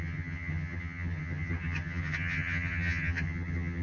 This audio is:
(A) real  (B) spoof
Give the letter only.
B